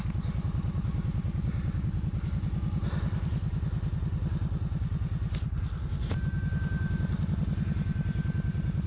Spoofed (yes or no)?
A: no